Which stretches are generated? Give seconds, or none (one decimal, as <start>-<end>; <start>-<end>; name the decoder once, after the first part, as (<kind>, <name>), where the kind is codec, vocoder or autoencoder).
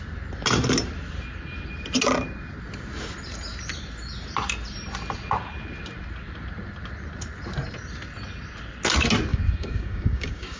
9.3-10.6 (codec, DAC)